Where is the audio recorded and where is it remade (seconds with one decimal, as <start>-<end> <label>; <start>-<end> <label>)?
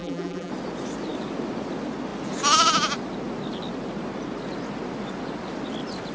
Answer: 0.0-0.5 remade; 0.5-6.1 recorded